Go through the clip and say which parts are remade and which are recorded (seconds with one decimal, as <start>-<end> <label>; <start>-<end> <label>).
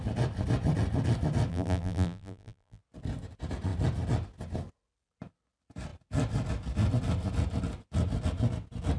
0.0-1.5 recorded; 1.5-2.8 remade; 2.8-9.0 recorded